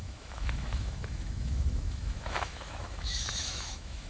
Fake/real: fake